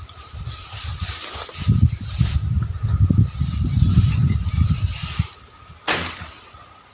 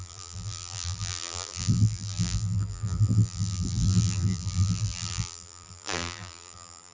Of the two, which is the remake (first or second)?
second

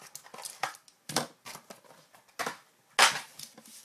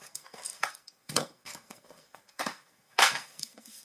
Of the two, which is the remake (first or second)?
second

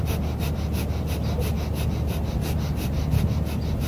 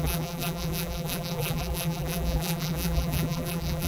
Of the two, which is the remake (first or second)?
second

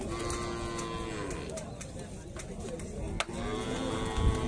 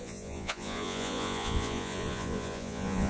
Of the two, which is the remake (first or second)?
second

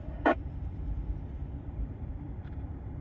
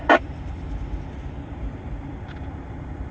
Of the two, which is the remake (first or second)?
first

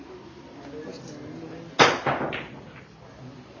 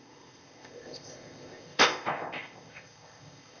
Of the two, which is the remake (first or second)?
second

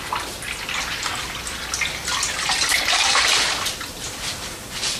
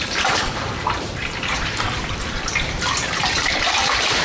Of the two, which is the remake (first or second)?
second